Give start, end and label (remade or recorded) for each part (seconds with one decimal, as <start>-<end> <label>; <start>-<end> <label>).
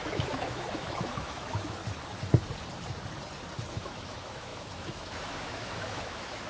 0.0-1.8 remade; 1.8-3.7 recorded; 3.7-6.5 remade